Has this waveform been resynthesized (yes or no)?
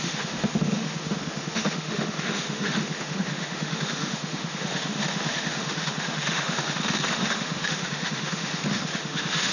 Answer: yes